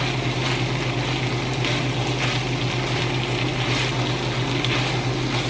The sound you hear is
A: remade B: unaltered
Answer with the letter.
B